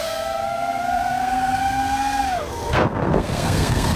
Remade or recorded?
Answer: remade